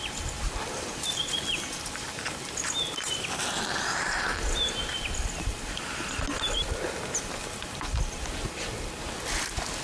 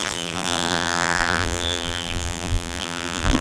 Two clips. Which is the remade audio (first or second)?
second